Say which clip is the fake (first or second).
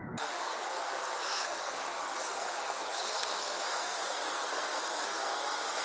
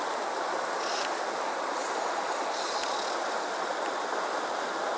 first